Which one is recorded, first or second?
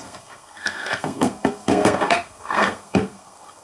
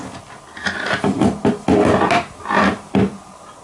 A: second